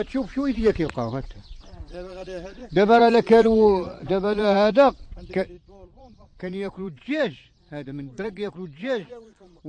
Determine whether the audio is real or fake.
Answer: fake